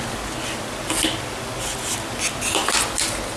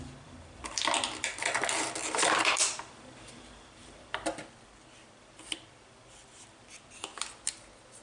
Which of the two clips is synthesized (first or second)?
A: second